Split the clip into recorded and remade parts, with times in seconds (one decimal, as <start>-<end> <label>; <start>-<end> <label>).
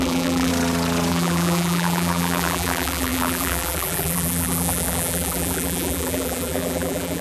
0.0-0.5 remade; 0.5-1.1 recorded; 1.1-7.2 remade